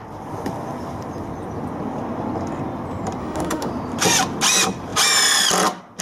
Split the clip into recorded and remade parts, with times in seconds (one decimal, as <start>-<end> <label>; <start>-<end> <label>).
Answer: 0.0-3.2 recorded; 3.2-3.7 remade; 3.7-6.0 recorded